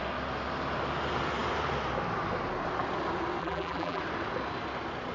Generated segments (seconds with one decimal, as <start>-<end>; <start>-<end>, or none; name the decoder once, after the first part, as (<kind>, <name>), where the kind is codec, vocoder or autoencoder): 3.4-4.0 (vocoder, BigVGAN v2)